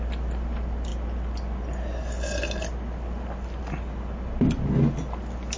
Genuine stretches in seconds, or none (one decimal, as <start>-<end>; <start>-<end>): 0.0-5.6